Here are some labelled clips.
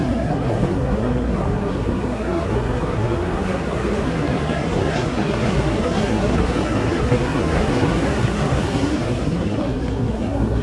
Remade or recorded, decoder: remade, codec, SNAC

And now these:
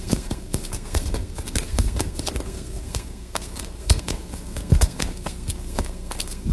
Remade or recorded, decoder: remade, codec, SNAC